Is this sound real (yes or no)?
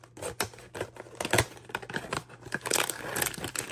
yes